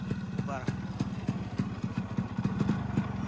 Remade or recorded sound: recorded